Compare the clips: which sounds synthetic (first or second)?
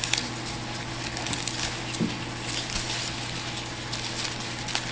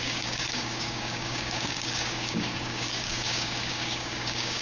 second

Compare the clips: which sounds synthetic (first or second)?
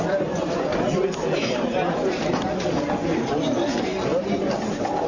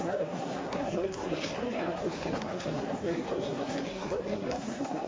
second